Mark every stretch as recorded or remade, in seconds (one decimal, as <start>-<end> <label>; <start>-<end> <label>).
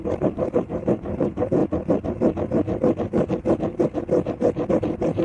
0.0-1.6 remade; 1.6-4.7 recorded; 4.7-5.2 remade